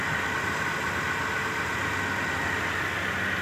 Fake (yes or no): no